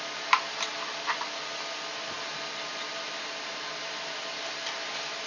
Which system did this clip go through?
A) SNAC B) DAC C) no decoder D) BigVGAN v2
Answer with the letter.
C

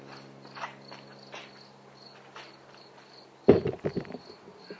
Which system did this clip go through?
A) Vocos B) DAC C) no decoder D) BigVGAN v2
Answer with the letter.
C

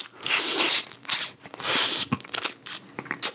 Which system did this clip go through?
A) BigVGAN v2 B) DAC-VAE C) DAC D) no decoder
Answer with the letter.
D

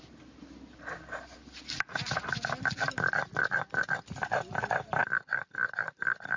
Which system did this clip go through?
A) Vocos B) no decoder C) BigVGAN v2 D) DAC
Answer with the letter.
B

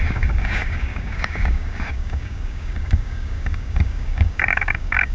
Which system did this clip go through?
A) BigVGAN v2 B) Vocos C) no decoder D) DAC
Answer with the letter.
D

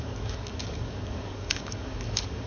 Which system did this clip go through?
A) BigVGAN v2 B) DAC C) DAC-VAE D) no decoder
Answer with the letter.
B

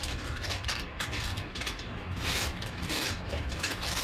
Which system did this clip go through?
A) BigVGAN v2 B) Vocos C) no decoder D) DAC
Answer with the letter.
D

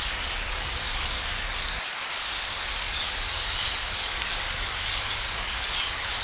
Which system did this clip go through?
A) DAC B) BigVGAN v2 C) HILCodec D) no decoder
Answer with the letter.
A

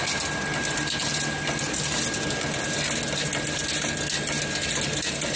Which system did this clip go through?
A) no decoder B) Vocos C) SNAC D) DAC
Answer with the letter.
A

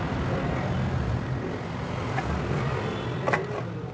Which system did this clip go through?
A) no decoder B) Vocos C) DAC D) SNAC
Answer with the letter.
A